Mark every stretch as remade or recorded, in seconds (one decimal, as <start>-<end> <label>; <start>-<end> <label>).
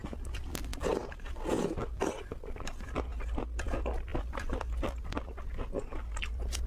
0.0-4.1 recorded; 4.1-5.1 remade; 5.1-6.7 recorded